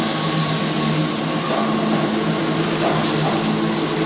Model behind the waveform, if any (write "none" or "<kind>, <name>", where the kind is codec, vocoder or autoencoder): none